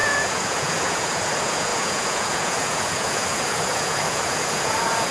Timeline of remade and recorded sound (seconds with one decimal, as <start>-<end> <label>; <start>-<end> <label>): 0.0-5.1 remade